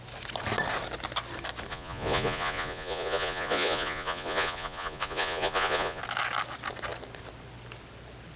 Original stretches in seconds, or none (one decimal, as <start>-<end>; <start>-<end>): 0.0-1.7; 6.0-8.4

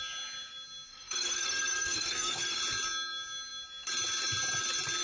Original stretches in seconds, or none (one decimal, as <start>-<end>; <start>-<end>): 0.0-0.9; 2.6-5.0